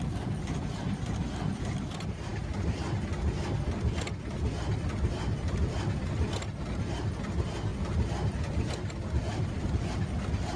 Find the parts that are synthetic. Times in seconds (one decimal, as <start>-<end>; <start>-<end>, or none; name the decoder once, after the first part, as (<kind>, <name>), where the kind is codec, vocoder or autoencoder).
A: none